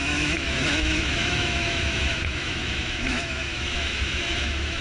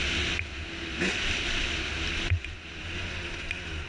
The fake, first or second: first